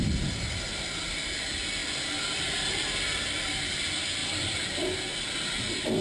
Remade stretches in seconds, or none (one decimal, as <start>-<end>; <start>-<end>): none